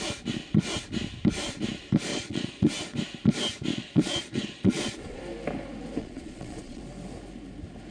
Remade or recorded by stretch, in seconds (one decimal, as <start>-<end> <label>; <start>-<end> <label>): 0.0-2.1 recorded; 2.1-2.7 remade; 2.7-3.7 recorded; 3.7-5.2 remade; 5.2-6.0 recorded; 6.0-6.8 remade; 6.8-7.9 recorded